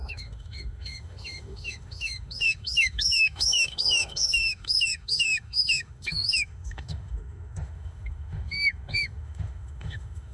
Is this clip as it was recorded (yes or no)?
no